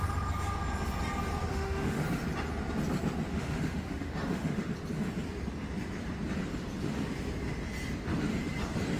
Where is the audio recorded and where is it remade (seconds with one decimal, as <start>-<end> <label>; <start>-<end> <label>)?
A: 0.0-1.5 recorded; 1.5-2.0 remade; 2.0-3.3 recorded; 3.3-4.7 remade; 4.7-9.0 recorded